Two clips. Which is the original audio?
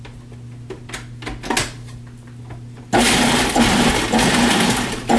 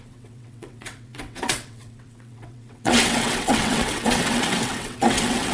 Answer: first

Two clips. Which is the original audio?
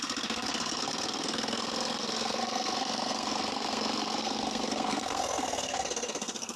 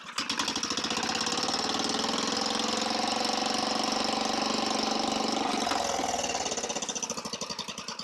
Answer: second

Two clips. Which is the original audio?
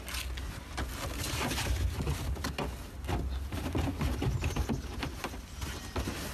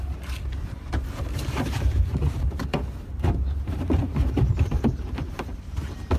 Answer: first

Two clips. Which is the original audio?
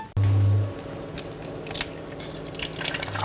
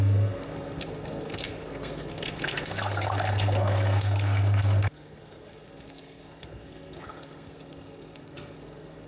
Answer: first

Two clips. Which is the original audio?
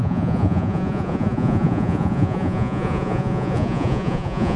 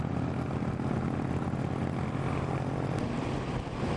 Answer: second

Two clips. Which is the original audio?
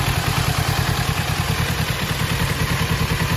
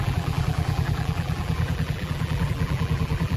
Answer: first